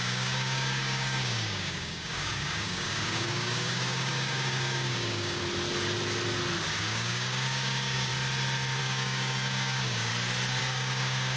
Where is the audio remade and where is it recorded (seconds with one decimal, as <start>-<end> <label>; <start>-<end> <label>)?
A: 0.0-5.4 remade; 5.4-6.8 recorded; 6.8-8.1 remade; 8.1-8.8 recorded; 8.8-10.1 remade; 10.1-10.6 recorded; 10.6-11.4 remade

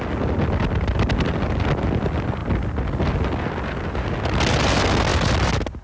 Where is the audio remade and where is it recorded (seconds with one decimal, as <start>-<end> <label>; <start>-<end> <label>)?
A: 0.0-5.8 recorded

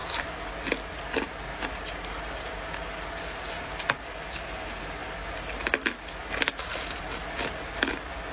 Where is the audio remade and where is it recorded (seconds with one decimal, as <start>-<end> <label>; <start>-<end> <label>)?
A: 0.0-8.3 recorded

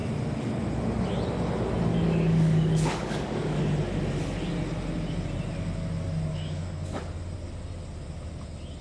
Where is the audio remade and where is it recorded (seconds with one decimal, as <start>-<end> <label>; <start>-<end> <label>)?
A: 0.0-1.9 recorded; 1.9-3.6 remade; 3.6-6.3 recorded; 6.3-7.0 remade; 7.0-8.8 recorded

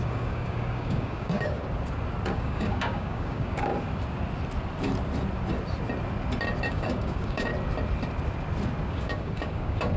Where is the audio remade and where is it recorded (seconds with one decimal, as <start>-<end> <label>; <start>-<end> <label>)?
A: 0.0-1.6 remade; 1.6-2.3 recorded; 2.3-3.7 remade; 3.7-6.7 recorded; 6.7-7.5 remade; 7.5-8.9 recorded; 8.9-10.0 remade